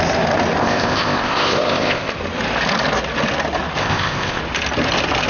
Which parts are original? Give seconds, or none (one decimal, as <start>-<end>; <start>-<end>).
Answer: 0.0-0.6; 2.1-3.8; 4.4-5.3